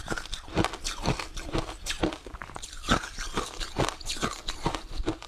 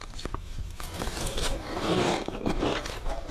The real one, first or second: first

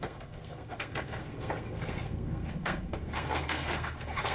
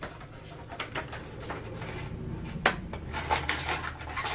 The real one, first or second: second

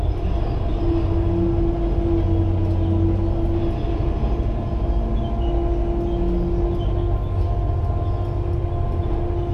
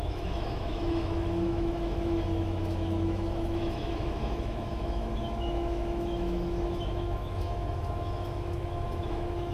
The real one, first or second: first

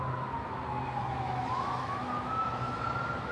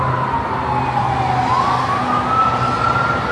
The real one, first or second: second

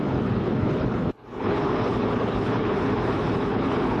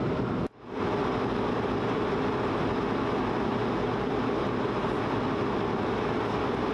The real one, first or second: second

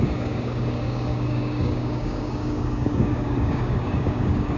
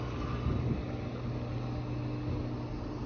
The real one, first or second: second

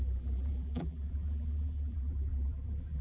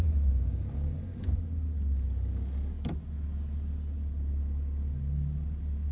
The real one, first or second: second